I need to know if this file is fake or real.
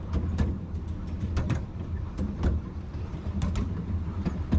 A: real